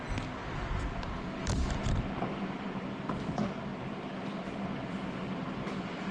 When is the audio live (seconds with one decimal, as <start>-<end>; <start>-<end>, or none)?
0.0-6.1